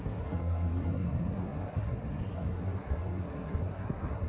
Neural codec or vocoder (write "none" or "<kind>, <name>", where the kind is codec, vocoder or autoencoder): codec, SNAC